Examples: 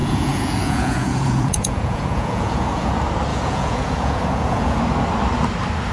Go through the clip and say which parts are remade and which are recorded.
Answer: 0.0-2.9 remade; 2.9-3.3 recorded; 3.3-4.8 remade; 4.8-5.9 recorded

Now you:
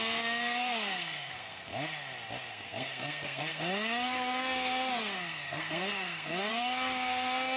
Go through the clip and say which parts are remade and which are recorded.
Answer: 0.0-1.7 remade; 1.7-2.5 recorded; 2.5-7.6 remade

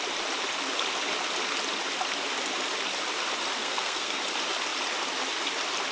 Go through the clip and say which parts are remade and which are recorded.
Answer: 0.0-3.6 recorded; 3.6-4.2 remade; 4.2-5.9 recorded

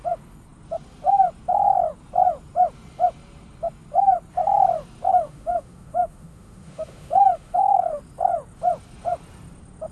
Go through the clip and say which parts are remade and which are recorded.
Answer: 0.0-5.1 recorded; 5.1-8.0 remade; 8.0-9.9 recorded